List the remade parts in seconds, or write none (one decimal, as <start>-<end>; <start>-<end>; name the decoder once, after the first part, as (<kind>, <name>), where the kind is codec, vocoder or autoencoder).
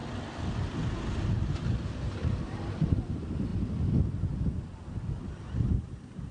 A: 1.7-3.5 (vocoder, BigVGAN v2); 5.2-6.3